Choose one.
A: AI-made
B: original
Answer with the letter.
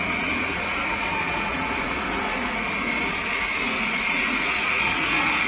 A